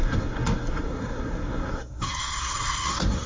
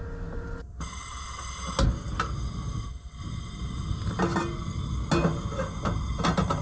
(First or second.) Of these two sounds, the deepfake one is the first